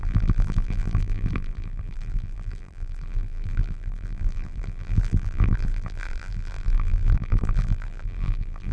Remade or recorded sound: remade